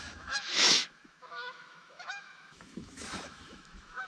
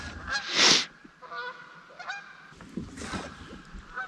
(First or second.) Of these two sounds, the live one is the second